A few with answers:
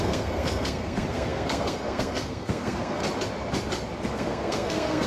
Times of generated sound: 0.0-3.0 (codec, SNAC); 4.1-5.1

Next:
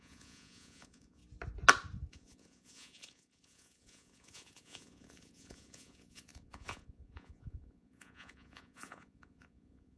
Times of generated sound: 0.0-1.2 (vocoder, Vocos); 2.1-10.0

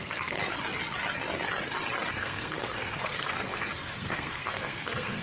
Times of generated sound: 0.0-0.4 (codec, SNAC); 2.1-5.2

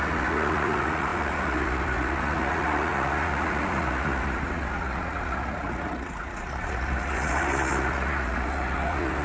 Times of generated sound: 0.0-9.2 (vocoder, Vocos)

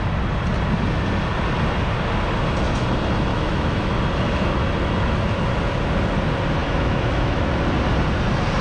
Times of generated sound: 3.3-4.0 (autoencoder, DAC-VAE); 6.6-7.6

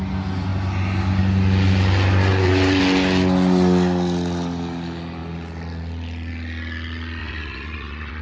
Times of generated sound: 2.3-2.8 (vocoder, Vocos); 7.2-8.2

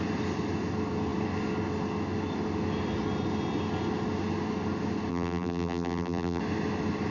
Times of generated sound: 5.1-6.4 (vocoder, BigVGAN v2)

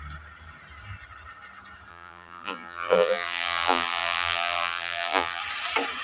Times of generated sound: 1.9-5.4 (vocoder, BigVGAN v2)